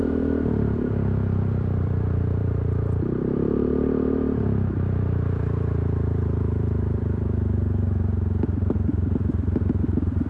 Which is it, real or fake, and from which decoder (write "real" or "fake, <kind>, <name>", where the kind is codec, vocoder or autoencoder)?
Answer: fake, vocoder, BigVGAN v2